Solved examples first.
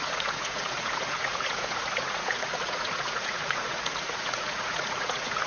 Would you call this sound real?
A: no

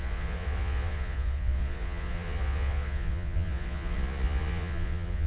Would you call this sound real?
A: no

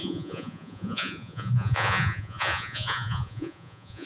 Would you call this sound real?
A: no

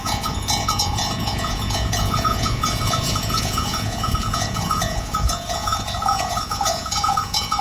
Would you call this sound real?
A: no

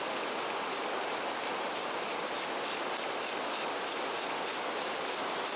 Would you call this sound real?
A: yes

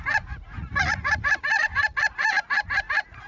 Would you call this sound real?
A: no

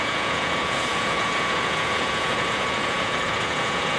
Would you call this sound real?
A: no